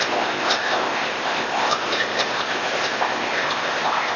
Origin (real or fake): fake